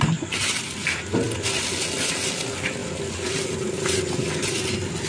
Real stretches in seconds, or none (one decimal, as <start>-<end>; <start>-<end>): 0.0-5.1